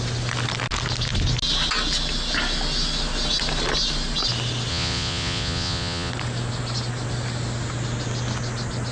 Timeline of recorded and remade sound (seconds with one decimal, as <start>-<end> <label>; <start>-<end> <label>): 0.0-4.7 recorded; 4.7-6.1 remade; 6.1-8.9 recorded